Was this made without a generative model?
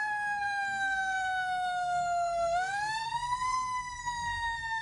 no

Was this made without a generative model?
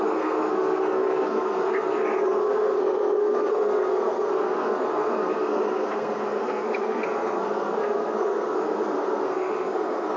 no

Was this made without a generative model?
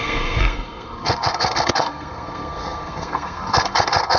no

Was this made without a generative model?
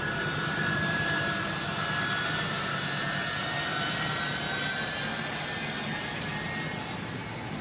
yes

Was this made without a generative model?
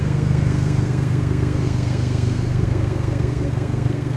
no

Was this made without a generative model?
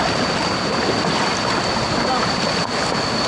yes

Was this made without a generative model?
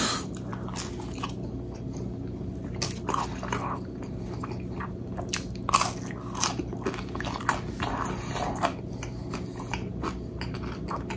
yes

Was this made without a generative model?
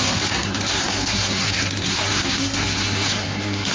no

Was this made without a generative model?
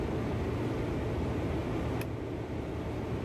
yes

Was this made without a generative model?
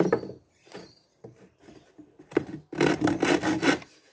yes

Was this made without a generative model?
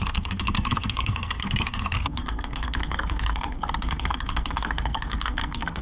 no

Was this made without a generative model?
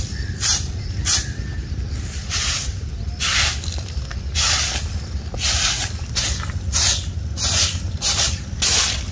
yes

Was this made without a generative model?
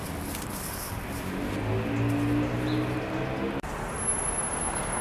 yes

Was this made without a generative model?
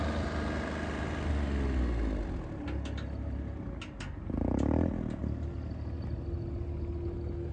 yes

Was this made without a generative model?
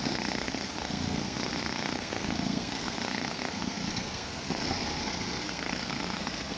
no